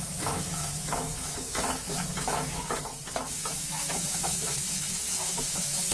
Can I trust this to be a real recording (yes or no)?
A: no